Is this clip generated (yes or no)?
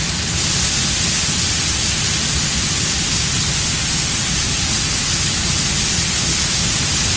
no